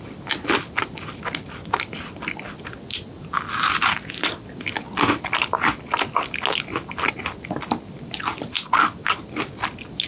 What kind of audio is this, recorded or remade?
recorded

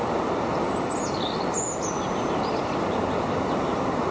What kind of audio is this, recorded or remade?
recorded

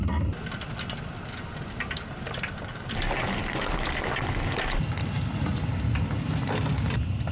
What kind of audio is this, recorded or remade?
recorded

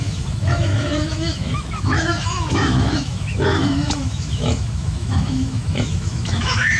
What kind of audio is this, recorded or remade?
remade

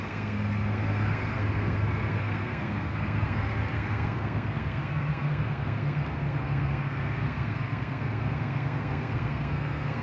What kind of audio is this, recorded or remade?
remade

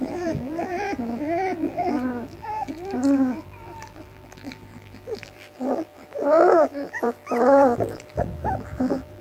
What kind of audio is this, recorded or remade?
remade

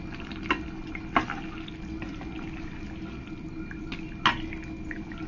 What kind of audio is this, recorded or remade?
recorded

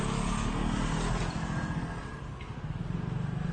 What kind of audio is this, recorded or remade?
recorded